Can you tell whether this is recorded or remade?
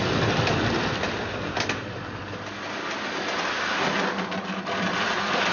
remade